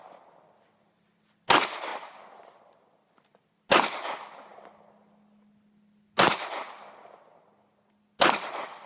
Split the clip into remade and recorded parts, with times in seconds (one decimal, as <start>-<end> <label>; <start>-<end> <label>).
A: 0.0-1.9 recorded; 1.9-3.1 remade; 3.1-8.9 recorded

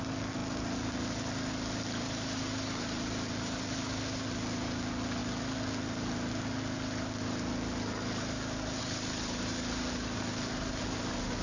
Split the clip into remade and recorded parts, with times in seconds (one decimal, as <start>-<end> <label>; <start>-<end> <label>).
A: 0.0-11.4 recorded

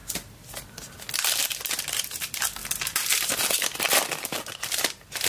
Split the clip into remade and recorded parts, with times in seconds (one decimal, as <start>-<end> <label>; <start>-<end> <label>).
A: 0.0-5.3 recorded

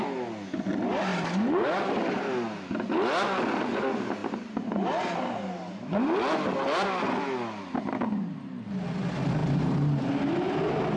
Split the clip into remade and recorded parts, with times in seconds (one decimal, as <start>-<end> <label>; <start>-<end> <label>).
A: 0.0-9.4 recorded; 9.4-10.1 remade; 10.1-11.0 recorded